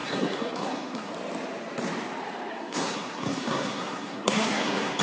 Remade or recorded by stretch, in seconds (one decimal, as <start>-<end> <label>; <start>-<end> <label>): 0.0-1.1 remade; 1.1-2.5 recorded; 2.5-5.0 remade